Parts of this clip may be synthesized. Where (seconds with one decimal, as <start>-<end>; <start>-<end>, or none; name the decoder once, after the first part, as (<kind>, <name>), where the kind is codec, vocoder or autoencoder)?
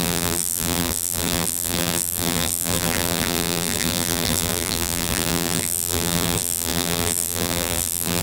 0.0-8.2 (vocoder, BigVGAN v2)